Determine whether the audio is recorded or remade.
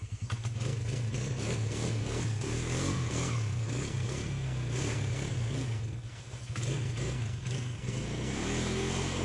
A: remade